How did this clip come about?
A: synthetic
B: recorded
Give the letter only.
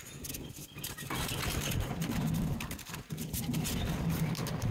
B